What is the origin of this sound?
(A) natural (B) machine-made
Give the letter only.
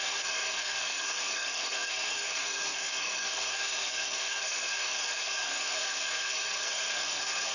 B